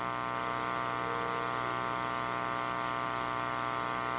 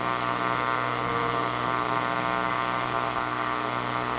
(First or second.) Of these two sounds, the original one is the first